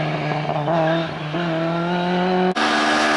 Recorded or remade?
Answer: recorded